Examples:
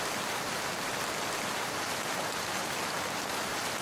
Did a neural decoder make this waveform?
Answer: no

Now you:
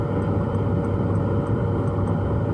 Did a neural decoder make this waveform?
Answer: no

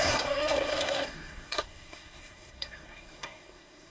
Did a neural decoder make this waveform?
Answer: yes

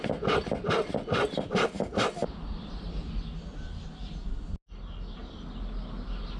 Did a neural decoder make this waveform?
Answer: no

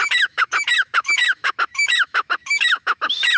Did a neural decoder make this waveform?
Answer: yes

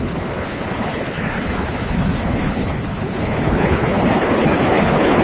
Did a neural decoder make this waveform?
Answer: yes